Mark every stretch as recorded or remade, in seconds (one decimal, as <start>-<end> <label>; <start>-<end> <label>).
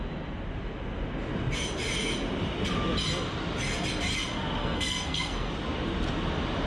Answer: 0.0-4.6 recorded; 4.6-5.5 remade; 5.5-6.7 recorded